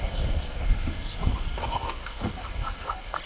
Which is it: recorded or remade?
remade